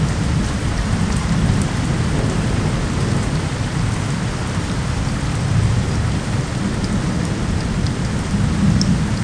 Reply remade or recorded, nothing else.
recorded